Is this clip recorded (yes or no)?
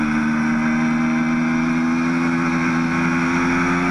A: yes